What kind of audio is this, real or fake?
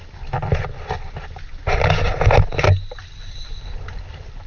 real